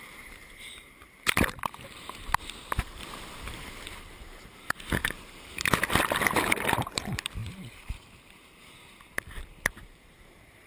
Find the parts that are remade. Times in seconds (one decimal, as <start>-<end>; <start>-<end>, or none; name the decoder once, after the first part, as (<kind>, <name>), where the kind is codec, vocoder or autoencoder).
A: 0.0-10.7 (vocoder, BigVGAN v2)